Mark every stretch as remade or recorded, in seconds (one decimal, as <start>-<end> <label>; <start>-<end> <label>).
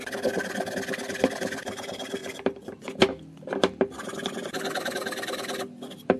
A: 0.0-6.2 recorded